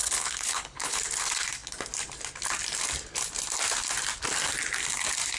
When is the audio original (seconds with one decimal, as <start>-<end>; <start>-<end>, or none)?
1.0-5.4